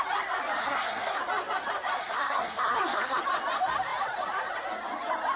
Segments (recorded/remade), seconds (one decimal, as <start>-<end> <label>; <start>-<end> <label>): 0.0-0.6 recorded; 0.6-1.2 remade; 1.2-2.0 recorded; 2.0-3.2 remade; 3.2-5.4 recorded